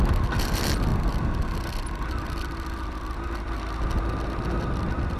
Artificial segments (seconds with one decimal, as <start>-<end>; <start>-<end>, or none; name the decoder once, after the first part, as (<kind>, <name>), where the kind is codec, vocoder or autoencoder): none